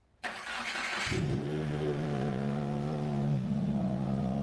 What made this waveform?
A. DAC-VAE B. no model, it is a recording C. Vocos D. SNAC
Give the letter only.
C